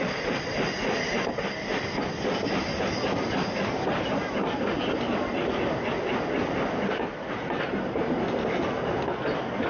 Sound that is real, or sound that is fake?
real